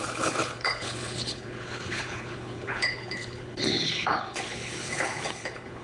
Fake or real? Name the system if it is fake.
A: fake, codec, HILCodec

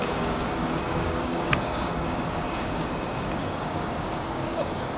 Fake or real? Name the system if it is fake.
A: fake, codec, DAC